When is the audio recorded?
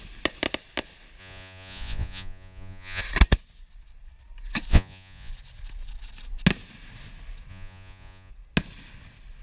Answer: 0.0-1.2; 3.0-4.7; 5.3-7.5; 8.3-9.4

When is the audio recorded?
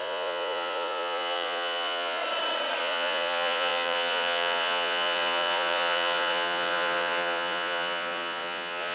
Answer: 2.2-2.8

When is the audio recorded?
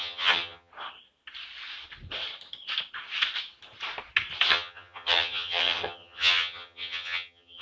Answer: 0.7-4.5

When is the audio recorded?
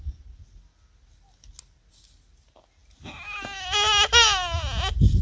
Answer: 0.0-5.2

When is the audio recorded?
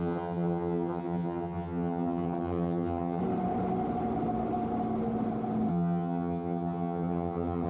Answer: 3.2-5.7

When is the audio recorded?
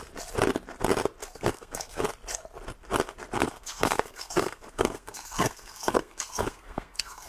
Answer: 0.0-1.2; 2.0-3.4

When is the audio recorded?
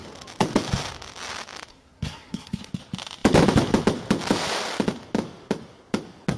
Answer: 0.0-1.7; 2.7-6.4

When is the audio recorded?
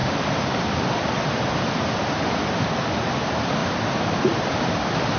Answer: 3.1-3.6; 4.7-5.2